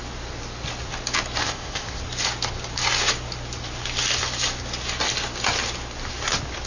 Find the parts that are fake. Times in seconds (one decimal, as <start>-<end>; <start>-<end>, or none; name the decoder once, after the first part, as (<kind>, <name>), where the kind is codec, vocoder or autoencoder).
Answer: 1.4-2.0 (codec, ZipCodec)